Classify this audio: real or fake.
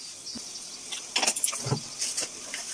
real